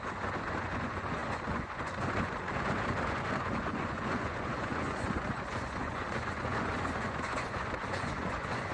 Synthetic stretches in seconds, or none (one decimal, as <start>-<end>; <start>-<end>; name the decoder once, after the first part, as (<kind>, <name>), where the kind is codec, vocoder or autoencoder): 0.0-8.7 (vocoder, Vocos)